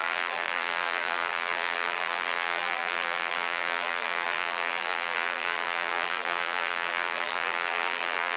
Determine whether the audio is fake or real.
fake